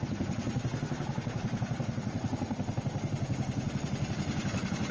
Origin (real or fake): real